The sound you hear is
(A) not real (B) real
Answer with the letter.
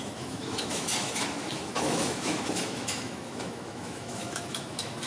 A